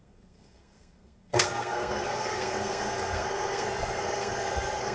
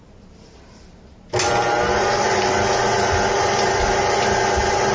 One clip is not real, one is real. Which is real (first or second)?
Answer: second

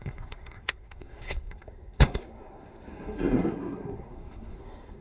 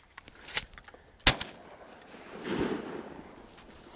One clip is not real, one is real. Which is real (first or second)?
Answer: second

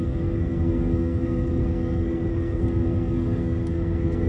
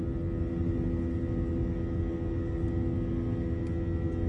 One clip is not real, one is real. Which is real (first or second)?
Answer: second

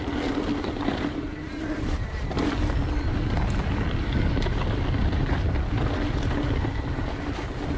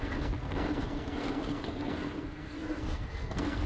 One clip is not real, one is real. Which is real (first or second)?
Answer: first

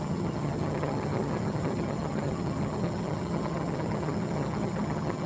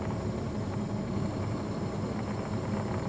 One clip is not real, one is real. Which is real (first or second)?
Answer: second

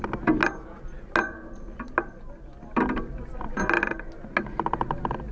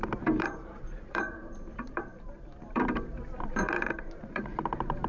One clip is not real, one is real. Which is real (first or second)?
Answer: first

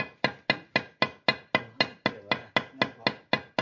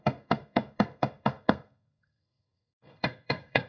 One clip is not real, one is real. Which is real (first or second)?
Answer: first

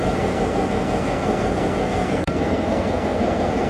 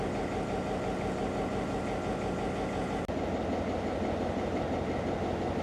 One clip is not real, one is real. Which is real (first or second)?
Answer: second